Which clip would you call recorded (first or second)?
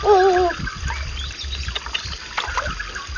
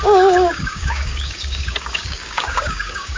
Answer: first